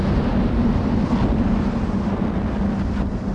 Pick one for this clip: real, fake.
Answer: real